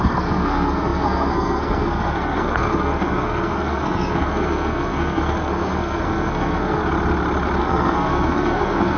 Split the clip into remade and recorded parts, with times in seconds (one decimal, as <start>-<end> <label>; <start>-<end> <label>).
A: 0.0-6.8 remade; 6.8-7.6 recorded; 7.6-9.0 remade